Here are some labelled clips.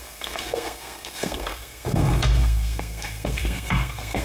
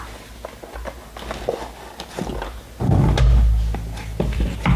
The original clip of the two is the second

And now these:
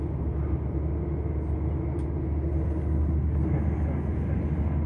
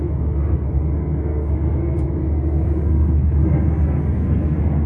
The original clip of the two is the first